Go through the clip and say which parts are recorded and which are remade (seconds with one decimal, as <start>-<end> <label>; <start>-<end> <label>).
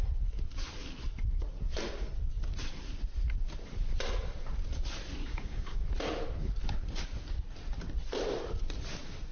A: 0.0-5.2 recorded; 5.2-5.8 remade; 5.8-9.3 recorded